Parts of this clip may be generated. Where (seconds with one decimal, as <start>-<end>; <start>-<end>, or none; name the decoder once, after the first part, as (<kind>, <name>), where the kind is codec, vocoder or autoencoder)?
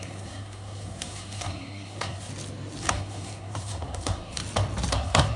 0.0-2.3 (codec, SNAC); 2.8-4.4; 4.9-5.4